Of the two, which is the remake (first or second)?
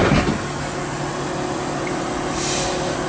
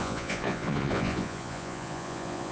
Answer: second